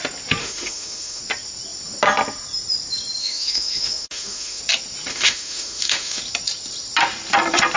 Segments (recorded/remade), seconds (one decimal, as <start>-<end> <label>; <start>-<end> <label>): 0.0-0.4 recorded; 0.4-1.2 remade; 1.2-3.2 recorded; 3.2-4.6 remade; 4.6-5.1 recorded; 5.1-6.2 remade; 6.2-7.8 recorded